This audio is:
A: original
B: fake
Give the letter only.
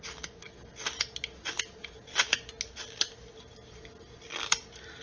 A